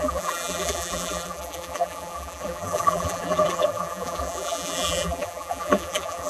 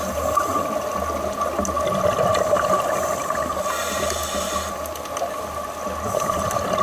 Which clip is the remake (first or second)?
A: first